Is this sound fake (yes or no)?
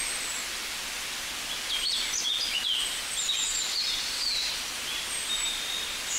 no